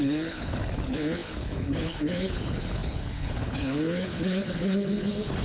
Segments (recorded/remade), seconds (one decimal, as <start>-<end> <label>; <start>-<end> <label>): 0.0-5.4 remade

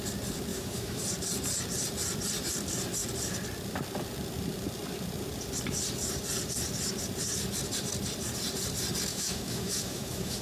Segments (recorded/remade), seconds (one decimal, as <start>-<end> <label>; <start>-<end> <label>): 0.0-0.5 recorded; 0.5-1.0 remade; 1.0-9.1 recorded; 9.1-10.4 remade

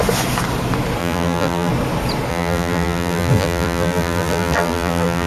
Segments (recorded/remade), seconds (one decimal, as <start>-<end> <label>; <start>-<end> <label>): 0.0-1.0 recorded; 1.0-1.7 remade; 1.7-2.3 recorded; 2.3-5.3 remade